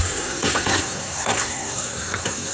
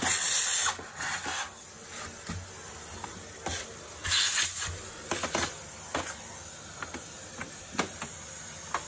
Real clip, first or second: second